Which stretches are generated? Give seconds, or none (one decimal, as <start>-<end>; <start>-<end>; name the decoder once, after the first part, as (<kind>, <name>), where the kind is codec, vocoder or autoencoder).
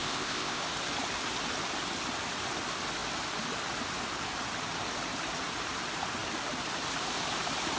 0.0-0.6 (codec, ZipCodec)